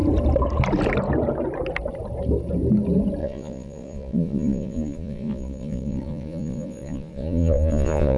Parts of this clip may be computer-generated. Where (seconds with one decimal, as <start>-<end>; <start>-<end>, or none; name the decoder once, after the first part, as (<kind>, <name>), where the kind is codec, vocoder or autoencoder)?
3.2-8.2 (vocoder, Vocos)